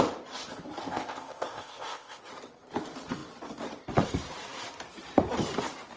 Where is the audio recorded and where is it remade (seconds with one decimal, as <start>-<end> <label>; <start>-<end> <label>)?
0.0-0.8 recorded; 0.8-2.2 remade; 2.2-6.0 recorded